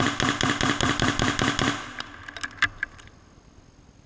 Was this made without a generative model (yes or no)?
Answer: yes